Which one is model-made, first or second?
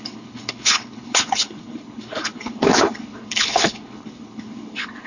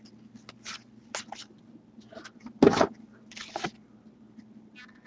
first